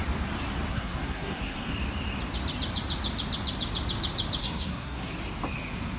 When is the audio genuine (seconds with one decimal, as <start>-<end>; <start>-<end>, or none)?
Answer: 0.0-0.7; 1.7-4.4; 5.1-6.0